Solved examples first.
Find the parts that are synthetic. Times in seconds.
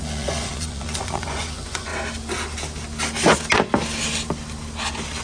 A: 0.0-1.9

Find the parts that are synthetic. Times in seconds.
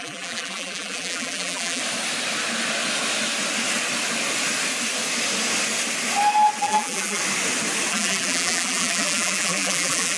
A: 0.0-1.8; 6.6-7.2; 7.9-10.2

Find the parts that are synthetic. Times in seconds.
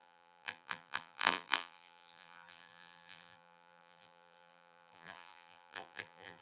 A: 0.0-6.4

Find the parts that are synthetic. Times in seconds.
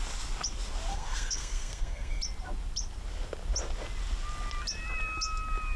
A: 0.9-2.2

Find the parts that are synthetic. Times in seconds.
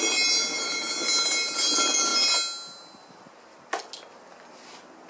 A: none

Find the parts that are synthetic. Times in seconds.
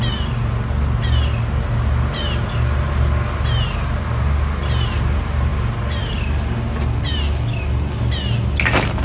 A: none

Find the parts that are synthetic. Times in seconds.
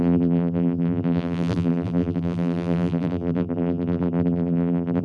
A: 0.0-5.0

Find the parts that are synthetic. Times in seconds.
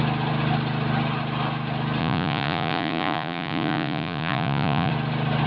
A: 2.0-4.9